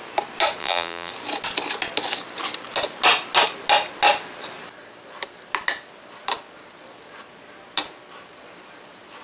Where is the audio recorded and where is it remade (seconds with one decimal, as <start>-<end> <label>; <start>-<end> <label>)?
0.0-0.6 recorded; 0.6-1.1 remade; 1.1-9.2 recorded